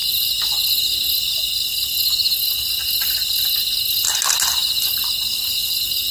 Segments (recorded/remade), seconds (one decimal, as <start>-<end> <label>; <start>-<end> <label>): 0.0-6.1 recorded